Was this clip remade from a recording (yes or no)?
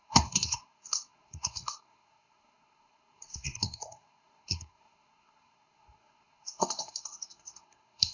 yes